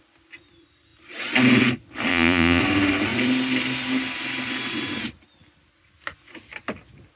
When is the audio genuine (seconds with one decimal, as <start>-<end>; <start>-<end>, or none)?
0.0-2.1; 2.6-7.2